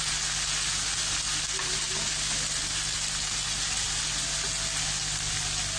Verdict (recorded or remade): recorded